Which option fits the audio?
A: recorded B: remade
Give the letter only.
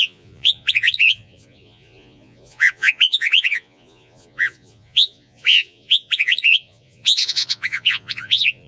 B